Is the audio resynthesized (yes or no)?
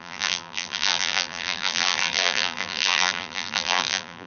yes